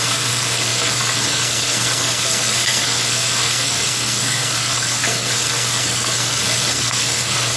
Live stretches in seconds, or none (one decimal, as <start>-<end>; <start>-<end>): none